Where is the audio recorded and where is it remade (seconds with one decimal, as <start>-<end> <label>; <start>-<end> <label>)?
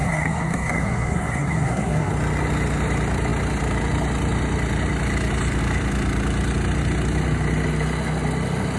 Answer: 0.0-2.1 remade; 2.1-8.8 recorded